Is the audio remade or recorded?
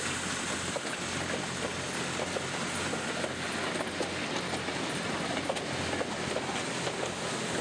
recorded